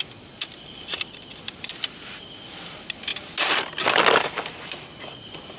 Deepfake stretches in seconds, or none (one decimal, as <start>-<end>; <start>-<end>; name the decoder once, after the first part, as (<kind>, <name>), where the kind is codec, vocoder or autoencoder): none